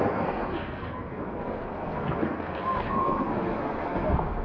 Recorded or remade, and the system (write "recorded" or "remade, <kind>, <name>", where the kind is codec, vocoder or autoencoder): remade, codec, SNAC